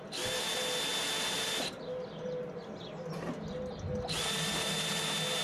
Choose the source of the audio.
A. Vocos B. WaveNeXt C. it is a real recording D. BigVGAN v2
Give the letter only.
C